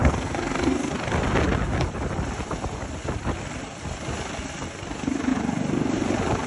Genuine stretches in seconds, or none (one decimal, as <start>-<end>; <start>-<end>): 0.9-6.5